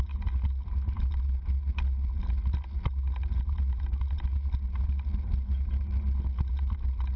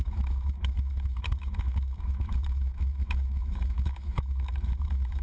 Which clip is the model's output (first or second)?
second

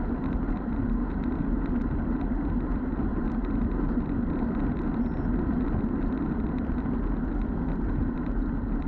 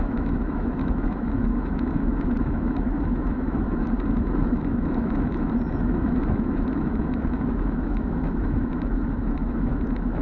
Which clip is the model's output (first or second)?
second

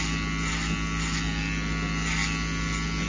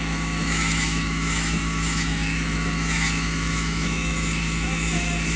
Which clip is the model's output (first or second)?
second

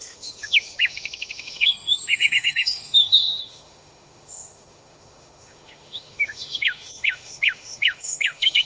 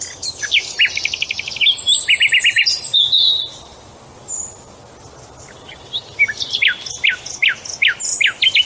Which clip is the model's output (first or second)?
first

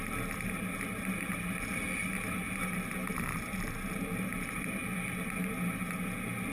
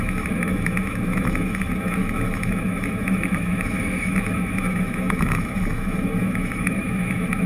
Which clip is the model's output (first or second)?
second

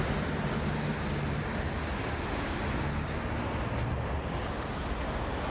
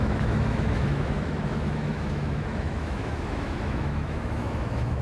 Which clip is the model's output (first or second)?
second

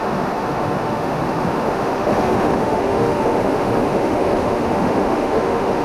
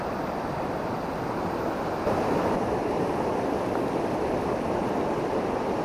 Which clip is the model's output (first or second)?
first